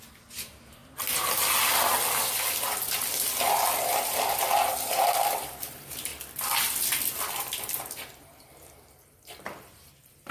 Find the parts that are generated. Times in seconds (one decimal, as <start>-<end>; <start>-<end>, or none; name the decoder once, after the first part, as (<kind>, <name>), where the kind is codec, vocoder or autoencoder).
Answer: 0.0-0.8 (vocoder, BigVGAN v2); 4.8-6.1; 7.4-10.3